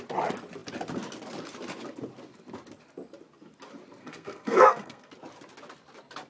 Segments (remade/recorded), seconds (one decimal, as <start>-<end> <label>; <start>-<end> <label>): 0.0-4.0 recorded; 4.0-5.1 remade; 5.1-6.3 recorded